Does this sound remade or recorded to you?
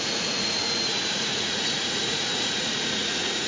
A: remade